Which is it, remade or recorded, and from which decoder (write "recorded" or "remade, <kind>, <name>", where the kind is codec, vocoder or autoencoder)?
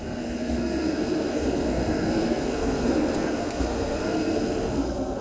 remade, codec, SNAC